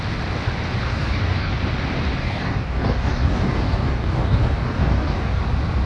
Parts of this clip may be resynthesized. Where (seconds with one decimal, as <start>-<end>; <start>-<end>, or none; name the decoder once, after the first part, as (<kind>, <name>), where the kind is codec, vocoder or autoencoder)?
0.8-1.5 (codec, DAC); 2.2-5.4